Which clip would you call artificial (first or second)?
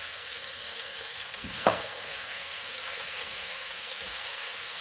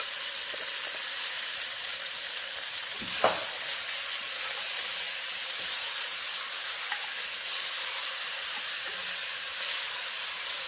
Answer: first